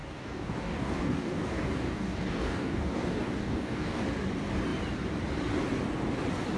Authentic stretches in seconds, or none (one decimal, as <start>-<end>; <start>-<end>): 4.0-6.6